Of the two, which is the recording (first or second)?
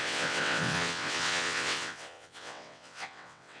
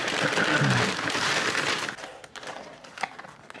second